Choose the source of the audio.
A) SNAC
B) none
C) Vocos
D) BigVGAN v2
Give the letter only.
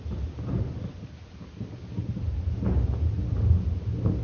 B